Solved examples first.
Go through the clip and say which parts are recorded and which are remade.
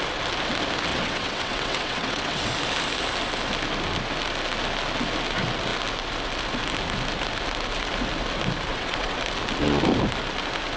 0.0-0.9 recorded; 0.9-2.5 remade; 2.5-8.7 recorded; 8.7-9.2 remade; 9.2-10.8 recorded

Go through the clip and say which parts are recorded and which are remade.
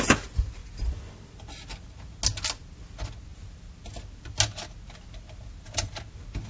0.0-6.5 recorded